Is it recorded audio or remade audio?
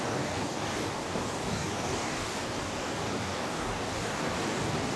remade